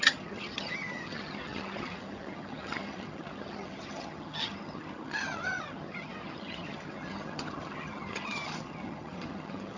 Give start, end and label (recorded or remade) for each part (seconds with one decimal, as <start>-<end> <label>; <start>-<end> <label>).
0.0-9.8 remade